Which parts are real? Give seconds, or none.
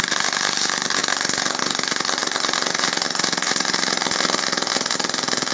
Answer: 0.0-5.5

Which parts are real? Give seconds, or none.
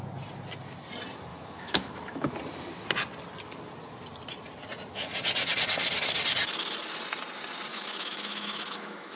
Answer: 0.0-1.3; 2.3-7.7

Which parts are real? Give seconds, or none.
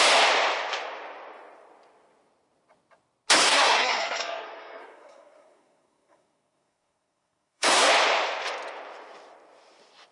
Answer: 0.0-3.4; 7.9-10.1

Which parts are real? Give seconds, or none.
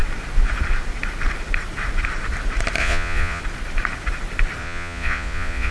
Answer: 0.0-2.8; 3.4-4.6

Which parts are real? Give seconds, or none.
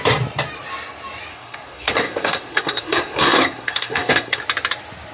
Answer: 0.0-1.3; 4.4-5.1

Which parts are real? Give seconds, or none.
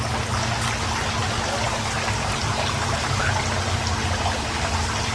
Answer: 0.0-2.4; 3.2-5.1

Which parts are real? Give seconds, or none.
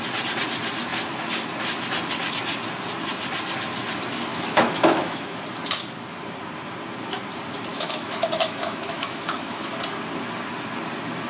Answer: 0.0-4.3; 5.4-7.7; 9.7-11.3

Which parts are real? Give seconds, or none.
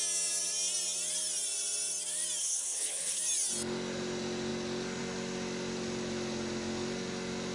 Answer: 0.0-2.4; 3.2-7.5